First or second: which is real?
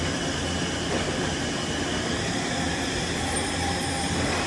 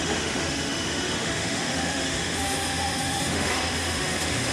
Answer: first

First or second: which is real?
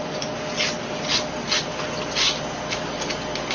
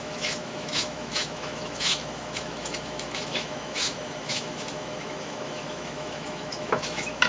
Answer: first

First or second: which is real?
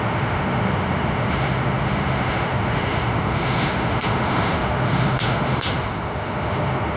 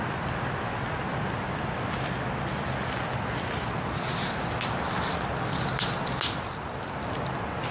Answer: second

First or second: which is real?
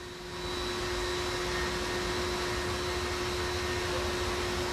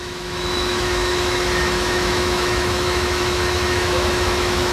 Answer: first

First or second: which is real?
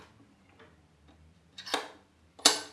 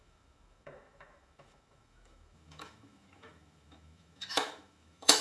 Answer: first